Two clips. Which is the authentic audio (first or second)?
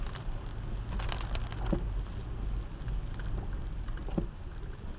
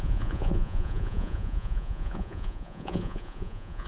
first